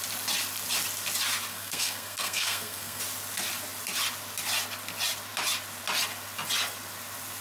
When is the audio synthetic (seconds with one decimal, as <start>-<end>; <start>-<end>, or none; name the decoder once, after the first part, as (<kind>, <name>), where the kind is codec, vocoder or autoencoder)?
1.5-3.0 (codec, SNAC)